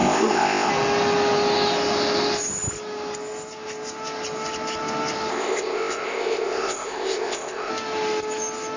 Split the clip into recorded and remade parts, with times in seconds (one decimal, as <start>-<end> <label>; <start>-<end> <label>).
0.0-0.7 remade; 0.7-5.3 recorded; 5.3-7.7 remade; 7.7-8.8 recorded